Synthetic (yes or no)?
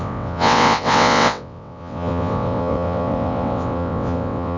yes